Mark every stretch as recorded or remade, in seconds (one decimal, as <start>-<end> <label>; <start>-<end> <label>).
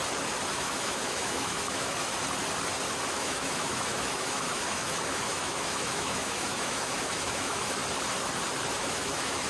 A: 0.0-0.5 recorded; 0.5-2.1 remade; 2.1-3.1 recorded; 3.1-7.8 remade; 7.8-8.7 recorded; 8.7-9.5 remade